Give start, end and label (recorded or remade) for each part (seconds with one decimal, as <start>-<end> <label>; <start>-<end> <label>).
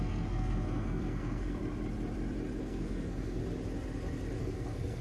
0.0-1.6 remade; 1.6-2.6 recorded; 2.6-3.4 remade; 3.4-4.4 recorded; 4.4-5.0 remade